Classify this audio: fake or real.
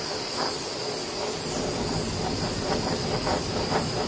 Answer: real